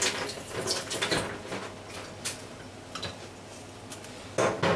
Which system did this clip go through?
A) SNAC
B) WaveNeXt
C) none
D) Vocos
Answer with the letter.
C